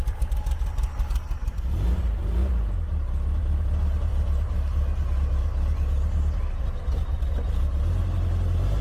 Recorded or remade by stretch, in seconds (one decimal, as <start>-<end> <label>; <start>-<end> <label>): 0.0-4.1 recorded; 4.1-5.2 remade; 5.2-8.8 recorded